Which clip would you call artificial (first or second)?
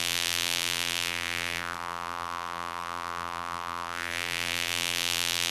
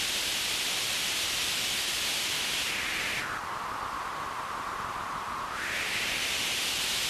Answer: first